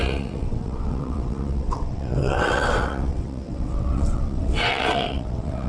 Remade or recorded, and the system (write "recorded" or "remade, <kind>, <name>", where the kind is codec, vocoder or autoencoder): remade, vocoder, WaveNeXt